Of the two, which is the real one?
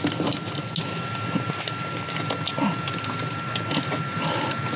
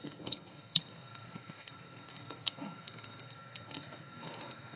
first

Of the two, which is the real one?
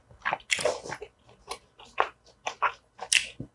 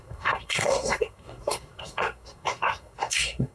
first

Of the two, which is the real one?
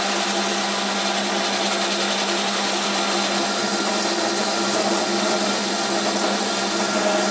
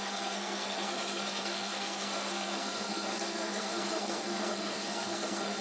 first